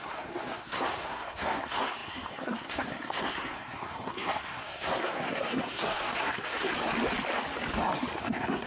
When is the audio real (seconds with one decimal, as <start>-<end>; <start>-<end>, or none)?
6.7-8.2